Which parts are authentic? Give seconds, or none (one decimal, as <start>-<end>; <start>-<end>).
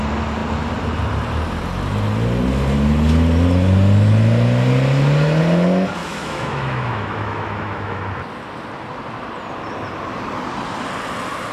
0.0-6.0; 8.0-11.5